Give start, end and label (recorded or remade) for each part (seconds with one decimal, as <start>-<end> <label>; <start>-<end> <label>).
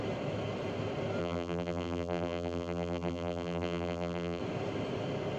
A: 0.0-1.2 recorded; 1.2-4.4 remade; 4.4-5.4 recorded